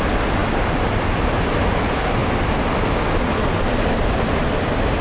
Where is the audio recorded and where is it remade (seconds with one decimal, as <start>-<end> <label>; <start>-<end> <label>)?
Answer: 0.0-5.0 recorded